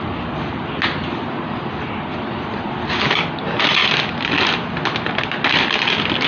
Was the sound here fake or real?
real